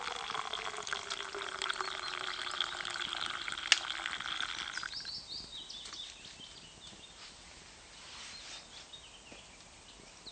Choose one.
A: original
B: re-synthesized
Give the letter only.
A